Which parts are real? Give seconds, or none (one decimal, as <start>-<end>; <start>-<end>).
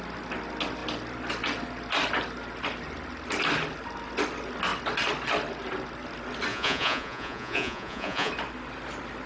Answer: 0.0-6.5; 8.3-9.3